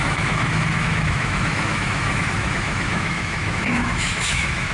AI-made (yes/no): yes